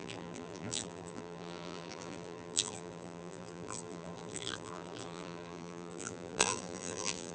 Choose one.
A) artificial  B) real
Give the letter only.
A